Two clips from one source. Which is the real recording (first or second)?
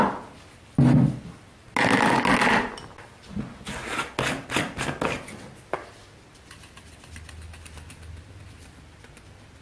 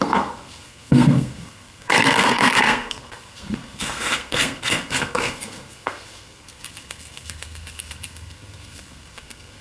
first